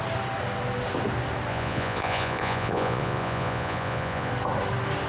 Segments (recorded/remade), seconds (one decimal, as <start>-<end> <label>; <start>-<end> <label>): 0.0-1.5 recorded; 1.5-4.3 remade; 4.3-5.1 recorded